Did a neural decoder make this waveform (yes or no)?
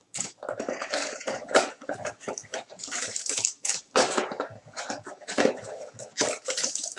yes